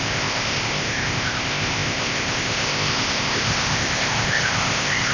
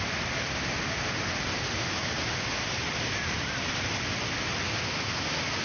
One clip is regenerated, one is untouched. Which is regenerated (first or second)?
first